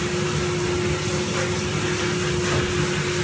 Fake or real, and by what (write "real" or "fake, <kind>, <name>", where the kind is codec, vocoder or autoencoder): real